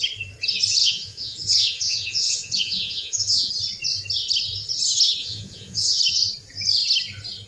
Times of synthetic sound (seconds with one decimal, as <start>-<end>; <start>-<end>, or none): 0.8-3.5; 5.2-6.0